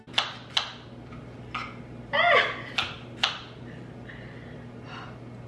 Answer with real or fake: real